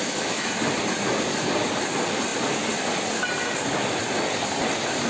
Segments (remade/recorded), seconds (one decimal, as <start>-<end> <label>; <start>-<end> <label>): 0.0-0.5 remade; 0.5-5.1 recorded